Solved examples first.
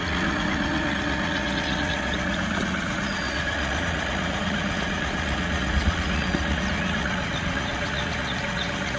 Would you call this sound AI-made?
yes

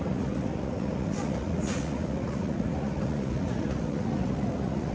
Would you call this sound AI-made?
yes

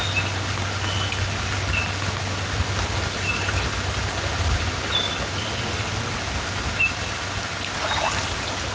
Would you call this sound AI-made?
no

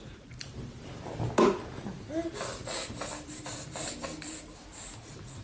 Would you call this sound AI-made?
no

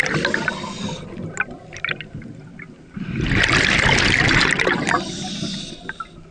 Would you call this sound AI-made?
no